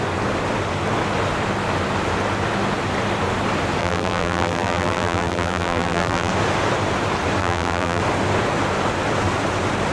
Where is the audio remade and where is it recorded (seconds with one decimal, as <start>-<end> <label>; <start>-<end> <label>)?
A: 0.0-3.8 recorded; 3.8-6.3 remade; 6.3-7.4 recorded; 7.4-8.0 remade; 8.0-9.9 recorded